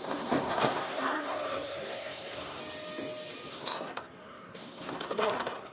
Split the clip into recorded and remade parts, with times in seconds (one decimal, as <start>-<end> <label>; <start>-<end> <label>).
0.0-2.6 remade; 2.6-3.5 recorded; 3.5-5.7 remade